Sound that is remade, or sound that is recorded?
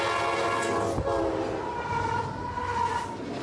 recorded